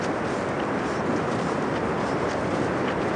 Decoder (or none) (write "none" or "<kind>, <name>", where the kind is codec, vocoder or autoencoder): none